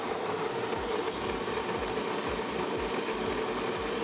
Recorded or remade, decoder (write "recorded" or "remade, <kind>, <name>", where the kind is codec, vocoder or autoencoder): recorded